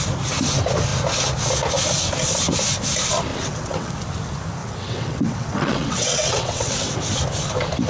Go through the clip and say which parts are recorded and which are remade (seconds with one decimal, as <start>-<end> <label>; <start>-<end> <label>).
0.0-3.3 recorded; 3.3-3.9 remade; 3.9-4.6 recorded; 4.6-7.0 remade; 7.0-7.9 recorded